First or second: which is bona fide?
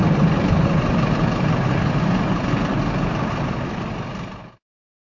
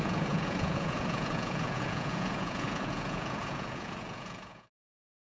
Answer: first